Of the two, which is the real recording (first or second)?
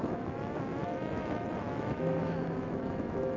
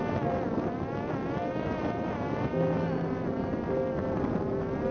second